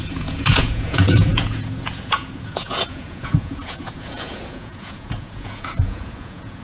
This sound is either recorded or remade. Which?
remade